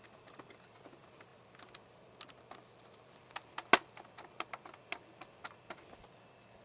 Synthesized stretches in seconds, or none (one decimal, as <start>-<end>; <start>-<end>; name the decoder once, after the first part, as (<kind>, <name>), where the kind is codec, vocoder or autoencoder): none